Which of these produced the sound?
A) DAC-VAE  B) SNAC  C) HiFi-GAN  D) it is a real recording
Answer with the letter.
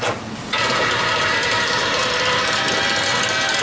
D